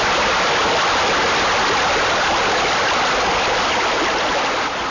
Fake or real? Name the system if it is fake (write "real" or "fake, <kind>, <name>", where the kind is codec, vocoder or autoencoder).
real